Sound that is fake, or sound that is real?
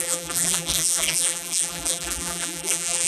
fake